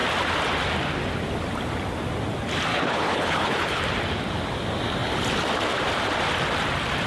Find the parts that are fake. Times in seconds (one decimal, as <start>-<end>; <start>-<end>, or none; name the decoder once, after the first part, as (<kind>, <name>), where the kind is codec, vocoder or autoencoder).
2.7-3.8 (codec, HILCodec)